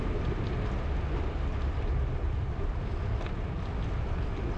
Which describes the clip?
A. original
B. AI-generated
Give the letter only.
A